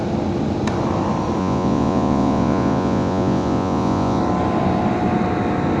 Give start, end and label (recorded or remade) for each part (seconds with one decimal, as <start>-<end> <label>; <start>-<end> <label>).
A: 0.0-1.4 recorded; 1.4-4.2 remade; 4.2-5.8 recorded